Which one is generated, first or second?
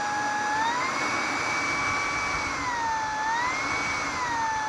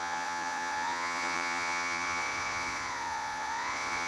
second